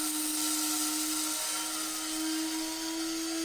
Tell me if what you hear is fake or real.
real